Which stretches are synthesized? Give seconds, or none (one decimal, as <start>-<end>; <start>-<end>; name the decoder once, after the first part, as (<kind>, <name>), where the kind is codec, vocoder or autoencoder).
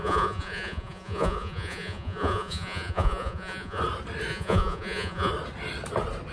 0.0-3.8 (vocoder, Vocos); 4.3-5.3